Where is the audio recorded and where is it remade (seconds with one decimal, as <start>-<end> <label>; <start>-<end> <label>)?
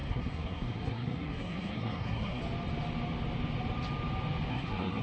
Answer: 0.0-2.4 remade; 2.4-4.5 recorded; 4.5-5.0 remade